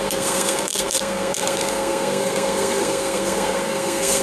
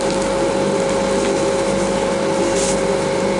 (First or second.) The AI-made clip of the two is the first